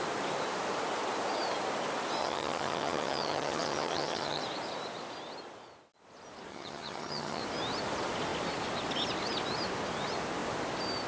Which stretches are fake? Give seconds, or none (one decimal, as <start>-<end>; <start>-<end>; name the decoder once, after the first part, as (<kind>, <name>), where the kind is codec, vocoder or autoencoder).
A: 2.2-4.4 (vocoder, HiFi-GAN); 6.5-7.4

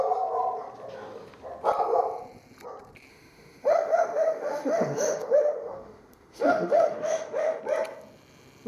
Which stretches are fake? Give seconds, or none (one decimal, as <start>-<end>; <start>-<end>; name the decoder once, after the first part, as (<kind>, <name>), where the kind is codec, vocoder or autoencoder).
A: 3.1-7.6 (autoencoder, DAC-VAE)

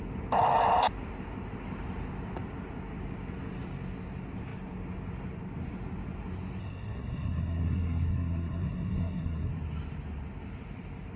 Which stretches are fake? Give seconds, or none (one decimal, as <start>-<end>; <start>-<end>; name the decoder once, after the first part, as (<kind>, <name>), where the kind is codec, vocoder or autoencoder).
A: 6.6-9.5 (codec, SNAC)

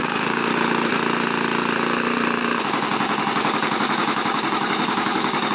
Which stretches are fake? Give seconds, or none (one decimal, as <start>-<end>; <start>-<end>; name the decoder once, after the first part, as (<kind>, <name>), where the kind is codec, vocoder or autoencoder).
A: 0.0-0.5 (codec, DAC); 2.4-5.5

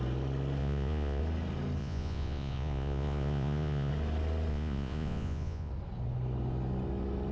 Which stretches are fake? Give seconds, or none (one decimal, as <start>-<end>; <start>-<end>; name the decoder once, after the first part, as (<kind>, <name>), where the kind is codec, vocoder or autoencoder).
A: 0.6-1.2 (vocoder, Vocos); 1.8-3.9; 4.5-5.7